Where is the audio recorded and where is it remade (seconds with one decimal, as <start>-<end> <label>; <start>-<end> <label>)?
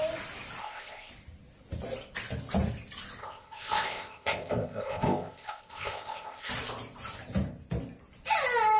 0.0-0.6 recorded; 0.6-1.1 remade; 1.1-3.2 recorded; 3.2-6.5 remade; 6.5-8.8 recorded